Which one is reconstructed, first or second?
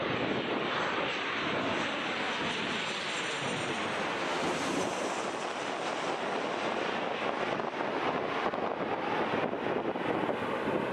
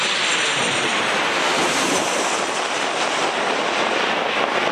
second